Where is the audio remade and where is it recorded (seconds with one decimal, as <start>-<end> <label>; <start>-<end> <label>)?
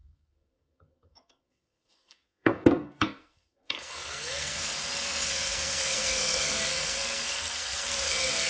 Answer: 0.0-8.5 remade